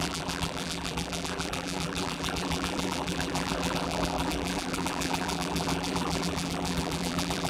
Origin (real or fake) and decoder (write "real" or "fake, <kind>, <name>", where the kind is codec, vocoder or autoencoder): fake, vocoder, BigVGAN v2